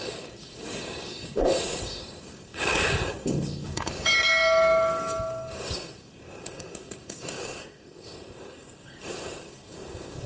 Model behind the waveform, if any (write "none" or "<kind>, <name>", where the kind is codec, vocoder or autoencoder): codec, DAC